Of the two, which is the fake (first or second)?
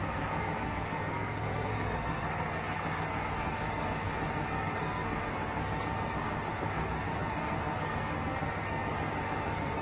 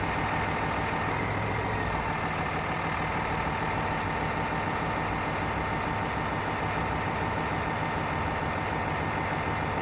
first